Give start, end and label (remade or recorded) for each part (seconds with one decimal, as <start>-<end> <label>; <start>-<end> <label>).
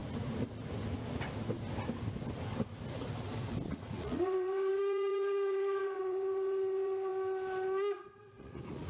0.0-3.7 recorded; 3.7-7.1 remade; 7.1-8.4 recorded; 8.4-8.9 remade